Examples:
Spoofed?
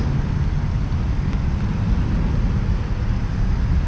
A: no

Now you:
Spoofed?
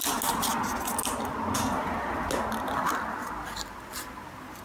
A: no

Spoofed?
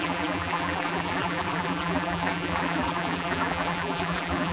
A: yes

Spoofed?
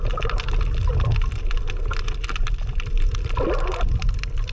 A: no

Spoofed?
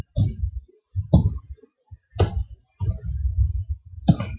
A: no